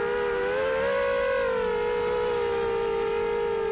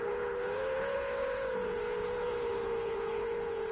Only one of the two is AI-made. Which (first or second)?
second